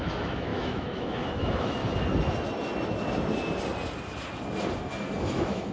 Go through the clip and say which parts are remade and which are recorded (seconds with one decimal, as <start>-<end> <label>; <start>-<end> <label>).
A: 0.0-1.8 remade; 1.8-5.2 recorded; 5.2-5.7 remade